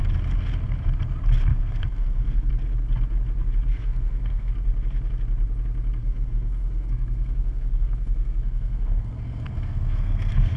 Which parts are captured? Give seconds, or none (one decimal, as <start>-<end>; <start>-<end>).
0.0-1.5; 2.5-3.7; 4.5-6.0